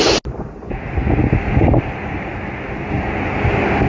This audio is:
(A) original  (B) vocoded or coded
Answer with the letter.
A